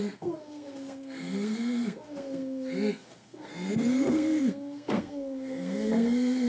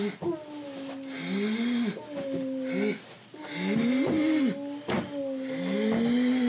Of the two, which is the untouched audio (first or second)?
second